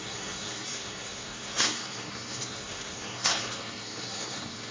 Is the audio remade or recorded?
remade